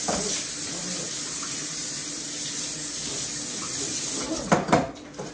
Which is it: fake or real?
real